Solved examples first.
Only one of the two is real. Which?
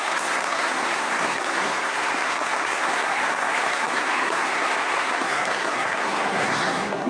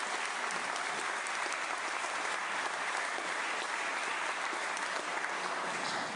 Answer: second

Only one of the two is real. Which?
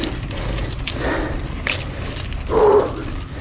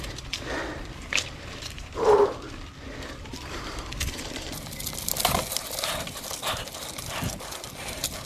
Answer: first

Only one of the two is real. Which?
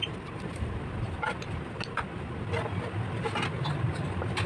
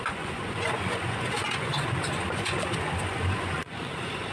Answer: first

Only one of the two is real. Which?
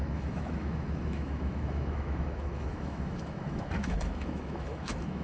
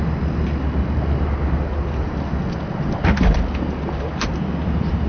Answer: second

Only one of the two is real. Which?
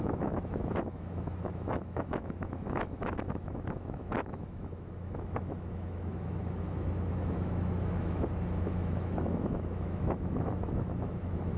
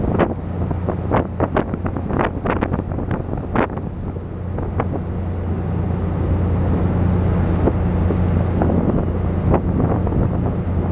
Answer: second